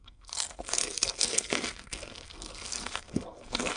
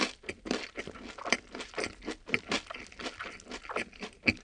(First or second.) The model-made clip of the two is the first